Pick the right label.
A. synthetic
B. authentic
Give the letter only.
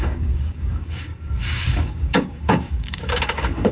A